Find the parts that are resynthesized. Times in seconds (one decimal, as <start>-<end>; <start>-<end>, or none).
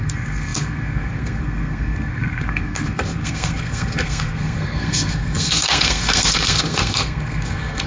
0.0-7.9